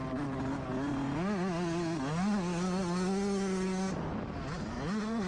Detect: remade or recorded recorded